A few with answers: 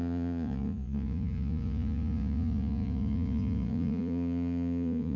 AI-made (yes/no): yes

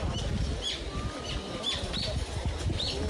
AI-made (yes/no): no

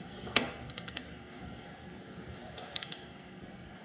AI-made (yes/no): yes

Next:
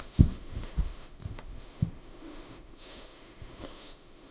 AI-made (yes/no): yes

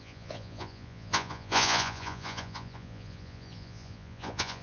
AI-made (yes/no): yes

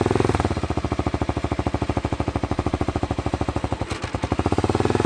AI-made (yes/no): no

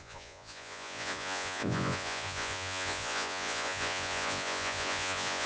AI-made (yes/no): yes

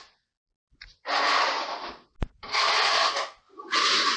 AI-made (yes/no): no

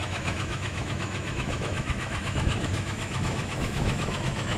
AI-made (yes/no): yes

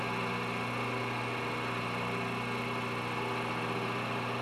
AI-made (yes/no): no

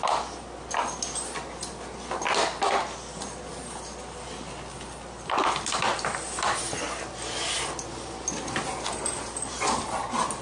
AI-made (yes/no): no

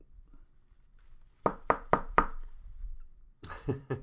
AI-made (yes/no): yes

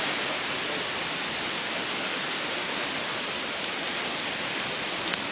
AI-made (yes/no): no